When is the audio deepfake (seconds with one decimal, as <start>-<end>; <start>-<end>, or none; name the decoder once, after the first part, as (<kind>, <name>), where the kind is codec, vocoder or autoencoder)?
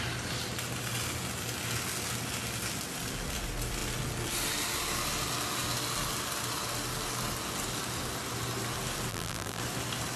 9.1-9.6 (vocoder, BigVGAN v2)